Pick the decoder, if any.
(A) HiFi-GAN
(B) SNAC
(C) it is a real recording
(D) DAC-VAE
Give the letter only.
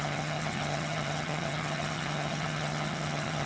A